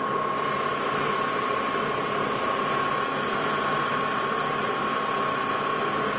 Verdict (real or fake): real